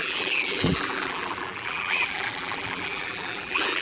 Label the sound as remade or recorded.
remade